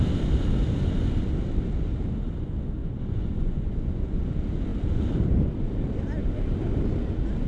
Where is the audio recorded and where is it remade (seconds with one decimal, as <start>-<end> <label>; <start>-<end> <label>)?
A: 0.0-2.8 recorded; 2.8-4.3 remade; 4.3-7.5 recorded